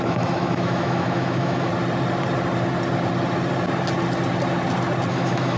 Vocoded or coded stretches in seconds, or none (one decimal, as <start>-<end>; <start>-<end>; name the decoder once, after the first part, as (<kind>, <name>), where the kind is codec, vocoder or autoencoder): 0.0-1.7 (autoencoder, DAC-VAE); 5.1-5.6